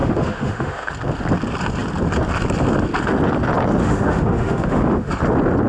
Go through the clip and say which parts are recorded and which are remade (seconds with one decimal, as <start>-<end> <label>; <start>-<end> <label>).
0.0-0.9 remade; 0.9-3.8 recorded; 3.8-5.1 remade; 5.1-5.7 recorded